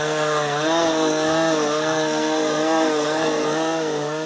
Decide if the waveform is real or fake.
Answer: fake